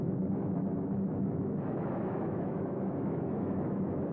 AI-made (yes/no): yes